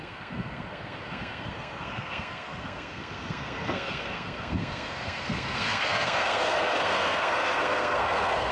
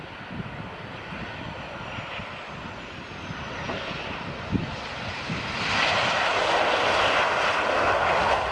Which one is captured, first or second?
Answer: second